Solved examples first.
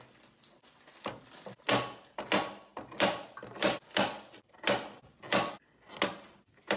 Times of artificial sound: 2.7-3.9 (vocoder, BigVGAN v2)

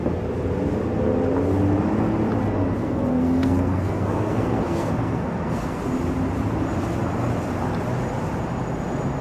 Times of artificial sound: 2.8-5.8 (codec, SNAC)

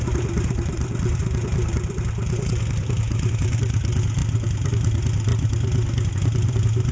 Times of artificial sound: 0.0-1.2 (vocoder, BigVGAN v2); 3.3-5.3; 6.1-6.9

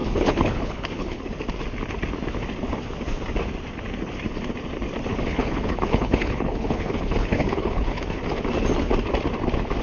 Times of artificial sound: 0.0-1.2 (codec, HILCodec); 5.1-8.2

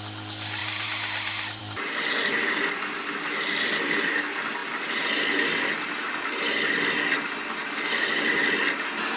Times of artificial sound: 0.6-1.6 (vocoder, BigVGAN v2)

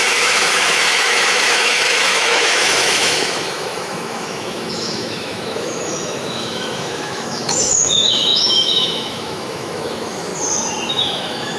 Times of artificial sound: 0.0-10.3 (autoencoder, DAC-VAE); 10.9-11.6